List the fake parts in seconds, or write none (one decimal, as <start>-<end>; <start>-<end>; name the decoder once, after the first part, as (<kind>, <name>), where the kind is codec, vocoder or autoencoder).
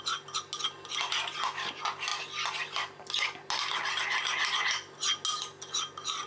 none